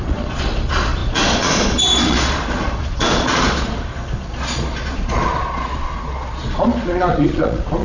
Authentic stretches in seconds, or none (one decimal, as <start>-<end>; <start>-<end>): none